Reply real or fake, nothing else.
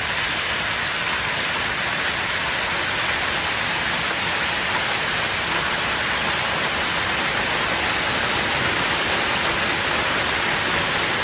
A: real